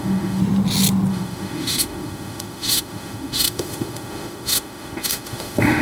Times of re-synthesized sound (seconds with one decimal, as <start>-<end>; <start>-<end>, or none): 0.0-0.4; 1.1-5.8